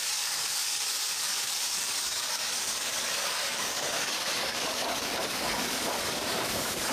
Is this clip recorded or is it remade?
remade